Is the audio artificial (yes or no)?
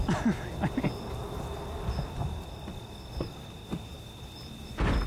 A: no